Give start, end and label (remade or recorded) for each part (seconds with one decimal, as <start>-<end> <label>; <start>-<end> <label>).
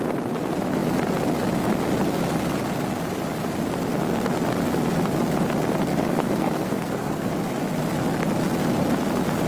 0.0-5.9 recorded; 5.9-7.3 remade; 7.3-9.5 recorded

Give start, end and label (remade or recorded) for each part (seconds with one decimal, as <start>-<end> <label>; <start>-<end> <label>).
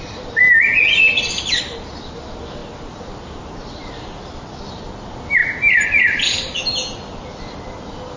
0.0-8.2 recorded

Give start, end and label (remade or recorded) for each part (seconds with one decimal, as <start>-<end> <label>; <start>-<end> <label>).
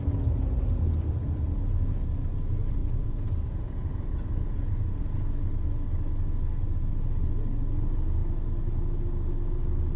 0.0-2.8 recorded; 2.8-5.0 remade; 5.0-10.0 recorded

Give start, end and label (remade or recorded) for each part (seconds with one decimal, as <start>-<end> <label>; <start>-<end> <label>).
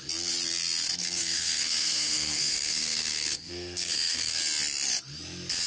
0.0-1.0 recorded; 1.0-4.4 remade; 4.4-5.7 recorded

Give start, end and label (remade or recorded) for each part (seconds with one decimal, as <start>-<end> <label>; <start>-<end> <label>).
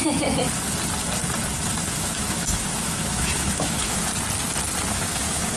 0.0-1.9 recorded; 1.9-4.1 remade; 4.1-4.9 recorded; 4.9-5.6 remade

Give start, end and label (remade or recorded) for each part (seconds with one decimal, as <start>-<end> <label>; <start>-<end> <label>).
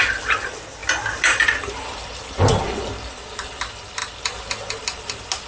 0.0-0.8 recorded; 0.8-2.8 remade; 2.8-4.0 recorded; 4.0-4.8 remade; 4.8-5.5 recorded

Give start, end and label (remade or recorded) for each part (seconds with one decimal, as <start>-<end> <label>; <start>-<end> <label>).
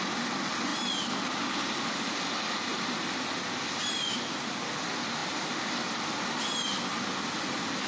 0.0-0.7 remade; 0.7-1.7 recorded; 1.7-7.9 remade